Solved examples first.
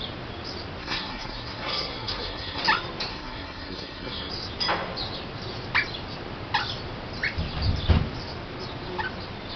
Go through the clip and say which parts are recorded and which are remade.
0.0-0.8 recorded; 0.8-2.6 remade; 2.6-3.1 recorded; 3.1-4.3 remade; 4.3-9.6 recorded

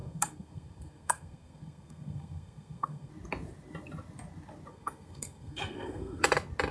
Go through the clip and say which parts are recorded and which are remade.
0.0-3.1 remade; 3.1-4.7 recorded; 4.7-6.2 remade; 6.2-6.7 recorded

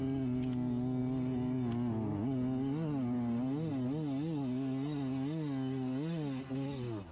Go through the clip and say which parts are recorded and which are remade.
0.0-7.1 recorded

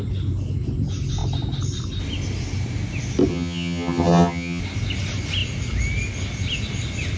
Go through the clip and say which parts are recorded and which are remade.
0.0-3.3 recorded; 3.3-4.6 remade; 4.6-7.2 recorded

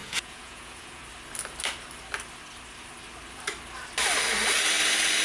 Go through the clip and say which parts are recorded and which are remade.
0.0-1.0 remade; 1.0-5.2 recorded

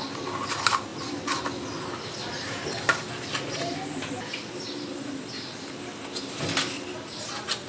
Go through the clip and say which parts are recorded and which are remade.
0.0-7.7 recorded

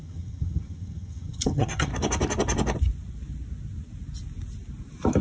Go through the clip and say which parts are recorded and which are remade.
0.0-1.9 remade; 1.9-5.2 recorded

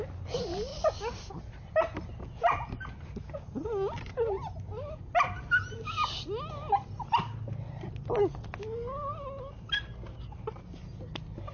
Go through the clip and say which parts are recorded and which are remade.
0.0-11.5 recorded